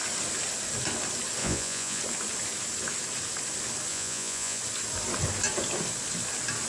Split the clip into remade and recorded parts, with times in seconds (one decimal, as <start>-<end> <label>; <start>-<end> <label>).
0.0-1.4 recorded; 1.4-2.0 remade; 2.0-3.9 recorded; 3.9-4.6 remade; 4.6-6.7 recorded